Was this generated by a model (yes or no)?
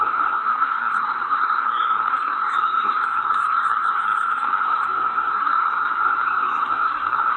yes